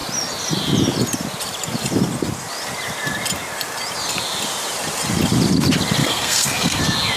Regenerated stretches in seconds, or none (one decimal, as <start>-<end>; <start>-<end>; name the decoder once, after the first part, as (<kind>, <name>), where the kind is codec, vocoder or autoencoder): 6.0-6.8 (codec, SNAC)